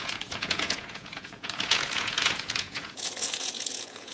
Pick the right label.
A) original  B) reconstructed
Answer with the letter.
B